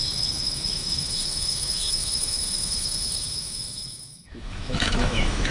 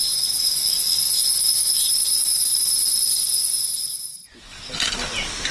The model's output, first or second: first